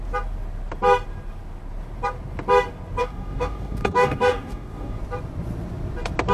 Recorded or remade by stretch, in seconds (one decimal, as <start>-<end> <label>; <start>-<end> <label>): 0.0-3.0 recorded; 3.0-5.0 remade; 5.0-6.3 recorded